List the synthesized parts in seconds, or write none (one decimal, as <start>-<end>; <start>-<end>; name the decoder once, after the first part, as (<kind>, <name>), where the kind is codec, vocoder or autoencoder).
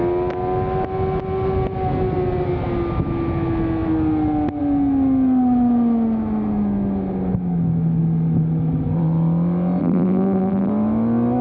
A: 9.8-10.7 (vocoder, BigVGAN v2)